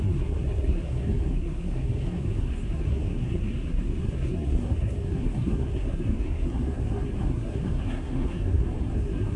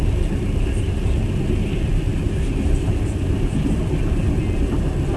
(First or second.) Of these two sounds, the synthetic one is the first